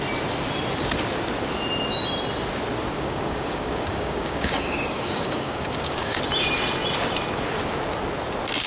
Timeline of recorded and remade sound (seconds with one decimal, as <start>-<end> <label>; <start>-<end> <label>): 0.0-2.9 recorded; 2.9-6.2 remade; 6.2-8.7 recorded